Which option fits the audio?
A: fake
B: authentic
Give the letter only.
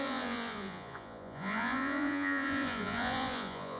A